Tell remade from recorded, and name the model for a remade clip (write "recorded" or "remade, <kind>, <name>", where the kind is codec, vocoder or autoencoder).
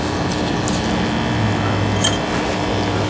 recorded